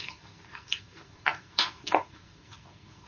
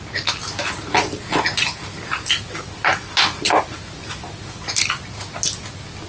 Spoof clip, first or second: first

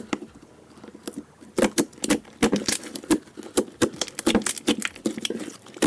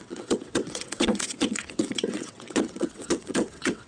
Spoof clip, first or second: second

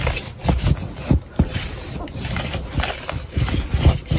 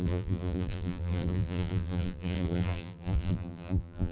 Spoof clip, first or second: second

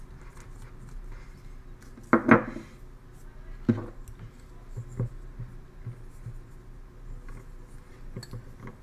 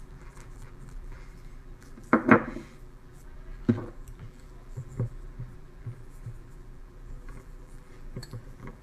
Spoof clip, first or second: second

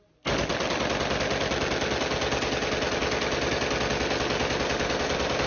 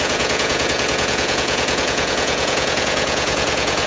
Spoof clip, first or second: second